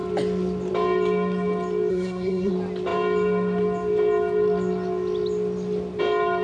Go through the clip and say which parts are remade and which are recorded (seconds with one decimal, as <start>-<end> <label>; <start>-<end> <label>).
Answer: 0.0-1.9 recorded; 1.9-2.5 remade; 2.5-6.4 recorded